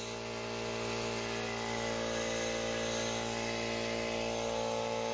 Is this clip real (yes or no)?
yes